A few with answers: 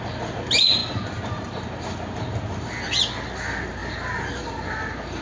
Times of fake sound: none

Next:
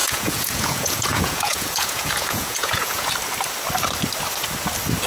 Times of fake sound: 0.0-3.1 (vocoder, Vocos)

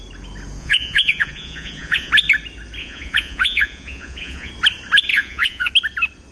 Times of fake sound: 0.6-2.1 (vocoder, Vocos); 2.8-4.5; 5.1-5.7

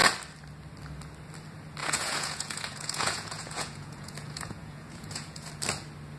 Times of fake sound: 1.8-5.5 (vocoder, Vocos)